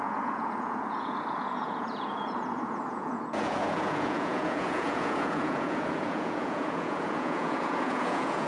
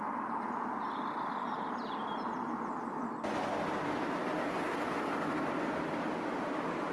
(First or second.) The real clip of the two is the second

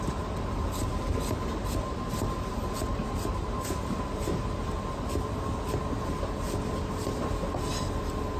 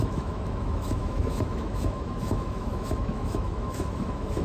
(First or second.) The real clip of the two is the first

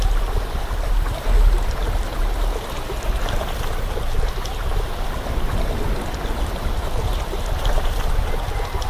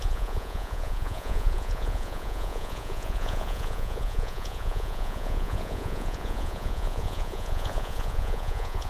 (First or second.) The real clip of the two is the first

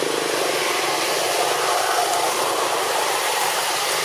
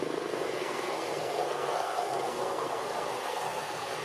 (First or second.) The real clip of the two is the first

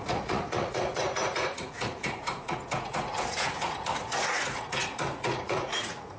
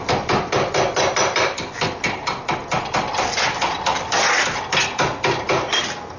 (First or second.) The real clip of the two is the second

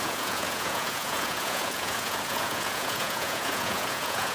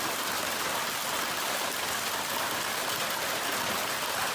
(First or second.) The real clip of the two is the second